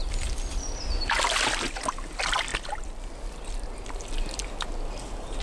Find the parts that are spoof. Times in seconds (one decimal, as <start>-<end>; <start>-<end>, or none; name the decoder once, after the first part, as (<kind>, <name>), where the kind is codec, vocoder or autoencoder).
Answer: none